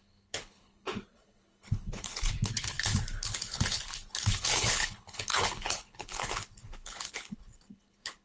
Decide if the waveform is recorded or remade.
remade